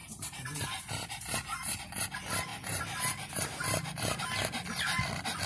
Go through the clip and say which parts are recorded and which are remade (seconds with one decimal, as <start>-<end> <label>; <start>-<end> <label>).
0.0-1.8 remade; 1.8-2.5 recorded; 2.5-4.2 remade; 4.2-5.5 recorded